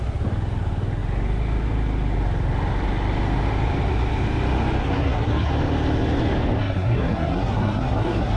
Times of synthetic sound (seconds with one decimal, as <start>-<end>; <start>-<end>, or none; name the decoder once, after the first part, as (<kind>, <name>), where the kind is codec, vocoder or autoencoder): 4.8-5.5 (codec, SNAC); 6.6-8.4